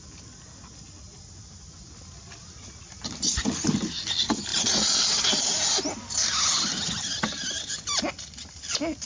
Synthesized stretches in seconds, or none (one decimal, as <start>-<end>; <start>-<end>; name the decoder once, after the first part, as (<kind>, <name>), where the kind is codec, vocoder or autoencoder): none

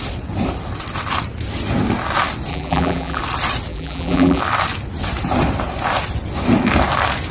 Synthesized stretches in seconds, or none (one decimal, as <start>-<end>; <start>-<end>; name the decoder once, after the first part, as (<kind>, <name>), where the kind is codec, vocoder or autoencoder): 2.5-3.2 (vocoder, BigVGAN v2); 3.7-4.4

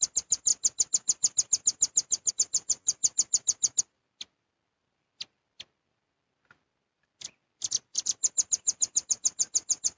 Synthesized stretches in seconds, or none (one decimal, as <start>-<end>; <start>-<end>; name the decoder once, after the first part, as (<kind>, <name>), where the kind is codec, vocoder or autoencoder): 0.0-0.5 (vocoder, BigVGAN v2); 2.3-3.0; 3.8-10.0

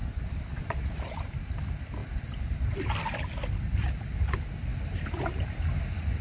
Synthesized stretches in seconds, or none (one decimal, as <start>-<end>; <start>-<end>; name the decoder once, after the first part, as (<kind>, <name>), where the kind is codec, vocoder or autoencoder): 2.0-3.3 (vocoder, BigVGAN v2)

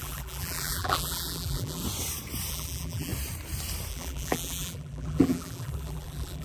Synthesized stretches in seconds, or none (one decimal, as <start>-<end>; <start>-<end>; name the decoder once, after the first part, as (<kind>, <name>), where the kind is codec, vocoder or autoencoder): 0.0-1.8 (vocoder, BigVGAN v2); 2.5-3.1; 3.9-6.4